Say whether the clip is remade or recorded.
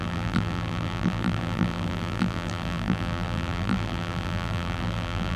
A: remade